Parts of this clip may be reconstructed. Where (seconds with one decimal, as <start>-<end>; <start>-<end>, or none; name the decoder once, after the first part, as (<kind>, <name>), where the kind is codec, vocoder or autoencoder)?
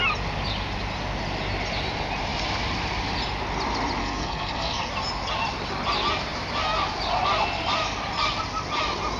4.0-4.9 (codec, SNAC)